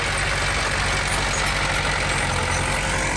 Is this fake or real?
real